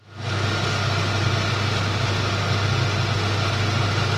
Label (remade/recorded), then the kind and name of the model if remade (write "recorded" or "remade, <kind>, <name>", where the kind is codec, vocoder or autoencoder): recorded